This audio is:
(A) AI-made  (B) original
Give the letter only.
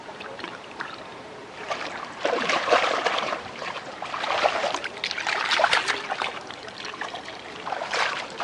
A